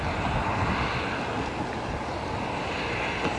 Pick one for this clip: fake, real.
real